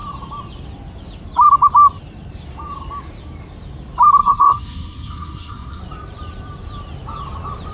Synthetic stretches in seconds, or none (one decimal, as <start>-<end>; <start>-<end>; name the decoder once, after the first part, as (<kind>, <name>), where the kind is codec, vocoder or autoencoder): 4.2-5.8 (codec, SNAC)